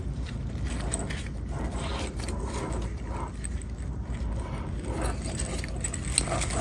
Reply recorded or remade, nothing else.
recorded